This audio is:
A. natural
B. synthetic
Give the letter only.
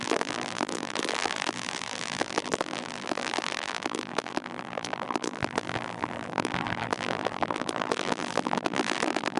B